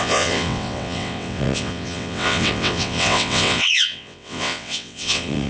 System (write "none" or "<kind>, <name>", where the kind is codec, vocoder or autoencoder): vocoder, WaveNeXt